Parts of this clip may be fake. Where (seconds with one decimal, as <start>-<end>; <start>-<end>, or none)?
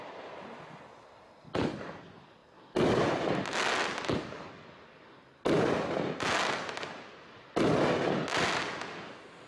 none